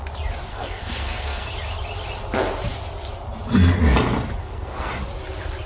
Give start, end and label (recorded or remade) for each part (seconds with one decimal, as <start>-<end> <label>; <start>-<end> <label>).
0.0-0.5 recorded; 0.5-1.5 remade; 1.5-4.4 recorded; 4.4-4.9 remade; 4.9-5.7 recorded